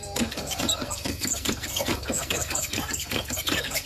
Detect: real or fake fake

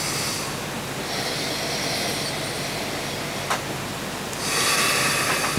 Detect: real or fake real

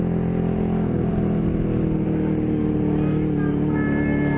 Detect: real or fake real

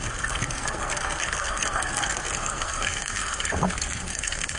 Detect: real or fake fake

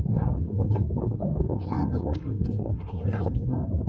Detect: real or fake fake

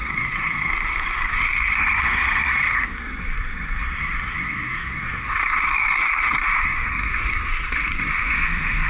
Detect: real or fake fake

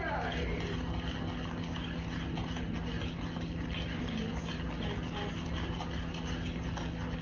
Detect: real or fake real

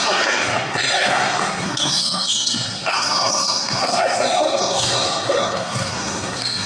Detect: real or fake fake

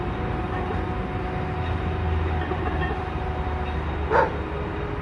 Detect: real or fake real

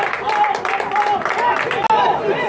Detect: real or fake real